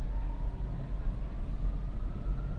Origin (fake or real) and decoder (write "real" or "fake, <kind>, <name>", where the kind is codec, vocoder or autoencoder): real